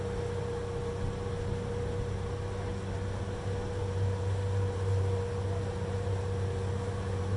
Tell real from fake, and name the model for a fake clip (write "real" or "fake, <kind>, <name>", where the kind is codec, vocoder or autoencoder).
real